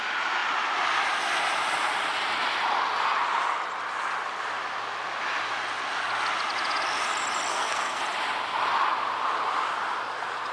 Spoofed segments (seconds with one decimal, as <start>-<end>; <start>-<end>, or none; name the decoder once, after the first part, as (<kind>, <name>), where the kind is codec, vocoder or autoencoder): 7.5-8.0 (codec, SNAC)

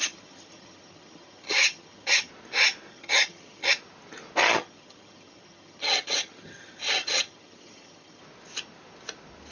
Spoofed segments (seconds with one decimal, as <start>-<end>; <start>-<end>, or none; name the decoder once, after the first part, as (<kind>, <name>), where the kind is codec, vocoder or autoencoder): 0.0-2.3 (vocoder, HiFi-GAN); 2.9-3.7; 4.4-8.2